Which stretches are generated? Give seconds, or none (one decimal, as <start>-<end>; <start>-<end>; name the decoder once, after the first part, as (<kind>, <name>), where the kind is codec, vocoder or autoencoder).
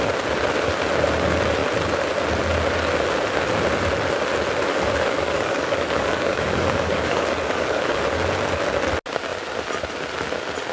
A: 4.7-8.0 (codec, DAC)